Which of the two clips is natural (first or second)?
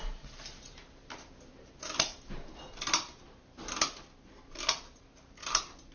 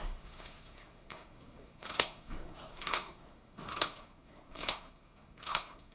first